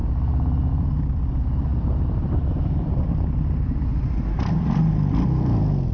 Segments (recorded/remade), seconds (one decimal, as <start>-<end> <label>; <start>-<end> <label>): 0.0-0.7 recorded; 0.7-3.9 remade; 3.9-4.5 recorded; 4.5-5.9 remade